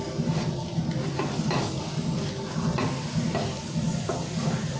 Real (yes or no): yes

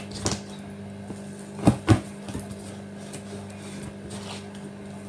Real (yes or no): yes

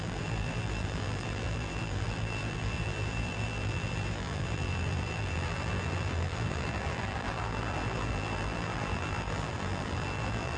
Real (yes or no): no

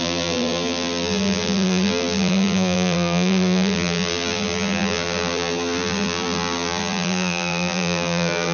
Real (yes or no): no